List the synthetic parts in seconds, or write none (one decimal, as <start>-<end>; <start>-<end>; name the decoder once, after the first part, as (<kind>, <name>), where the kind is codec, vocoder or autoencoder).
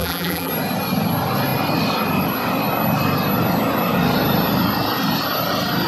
0.0-0.5 (vocoder, BigVGAN v2)